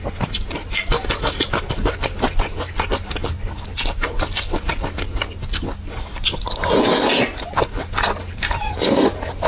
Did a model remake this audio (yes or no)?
no